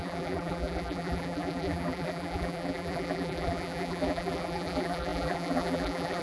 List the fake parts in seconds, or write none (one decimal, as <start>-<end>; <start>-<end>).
0.0-6.2